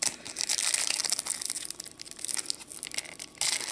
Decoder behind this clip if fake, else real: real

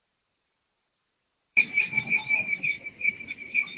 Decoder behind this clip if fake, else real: fake, vocoder, BigVGAN v2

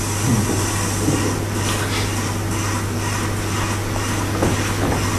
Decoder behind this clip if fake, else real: real